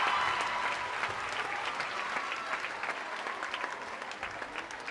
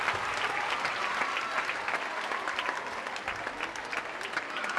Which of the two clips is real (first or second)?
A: first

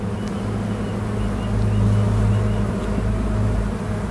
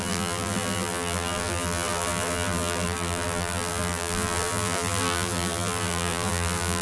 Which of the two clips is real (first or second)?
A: first